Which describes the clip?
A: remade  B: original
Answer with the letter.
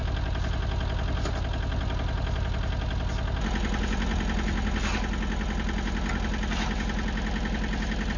B